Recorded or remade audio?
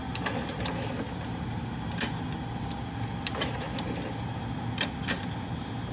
recorded